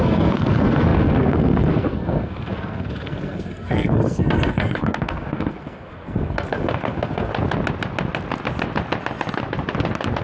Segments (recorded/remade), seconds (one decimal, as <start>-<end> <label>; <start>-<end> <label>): 0.0-7.3 remade; 7.3-10.2 recorded

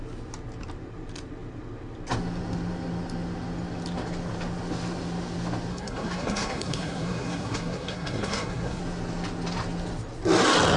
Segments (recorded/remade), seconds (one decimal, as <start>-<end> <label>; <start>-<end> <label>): 0.0-5.7 recorded; 5.7-8.8 remade; 8.8-10.8 recorded

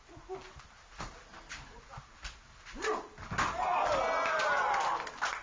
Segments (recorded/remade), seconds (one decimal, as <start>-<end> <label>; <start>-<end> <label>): 0.0-5.4 recorded

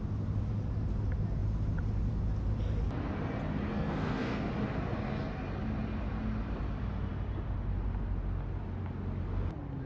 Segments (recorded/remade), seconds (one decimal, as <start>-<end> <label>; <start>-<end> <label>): 0.0-3.7 recorded; 3.7-4.5 remade; 4.5-9.9 recorded

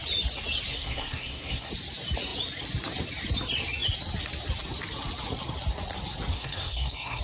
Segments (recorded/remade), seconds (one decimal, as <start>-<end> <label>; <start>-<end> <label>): 0.0-0.7 recorded; 0.7-1.7 remade; 1.7-6.3 recorded; 6.3-7.2 remade